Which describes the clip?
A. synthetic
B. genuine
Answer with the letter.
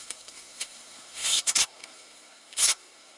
A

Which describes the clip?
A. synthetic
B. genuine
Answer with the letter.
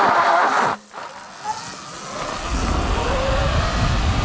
B